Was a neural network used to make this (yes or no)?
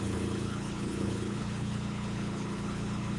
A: yes